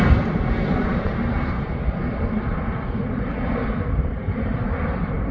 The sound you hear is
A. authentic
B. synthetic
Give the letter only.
B